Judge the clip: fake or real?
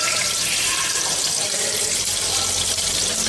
real